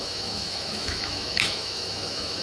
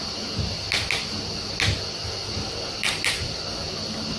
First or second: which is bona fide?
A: second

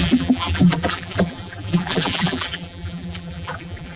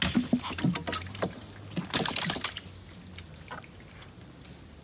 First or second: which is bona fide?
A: second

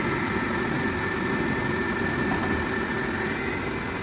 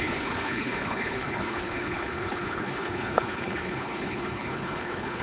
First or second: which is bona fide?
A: first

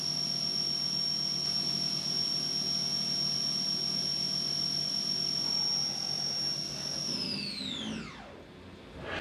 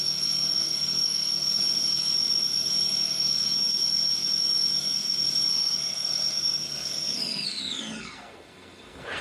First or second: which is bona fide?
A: first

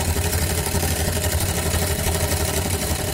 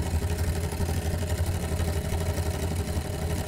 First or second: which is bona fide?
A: second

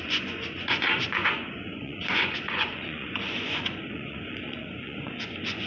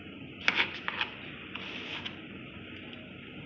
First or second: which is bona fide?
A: second